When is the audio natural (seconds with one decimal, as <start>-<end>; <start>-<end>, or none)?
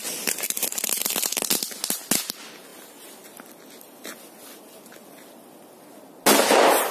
0.0-6.9